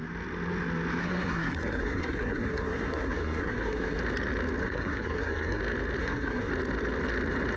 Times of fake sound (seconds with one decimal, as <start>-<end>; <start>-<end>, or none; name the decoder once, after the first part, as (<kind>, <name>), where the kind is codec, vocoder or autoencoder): 1.0-4.0 (codec, SNAC); 4.6-5.6; 6.0-6.5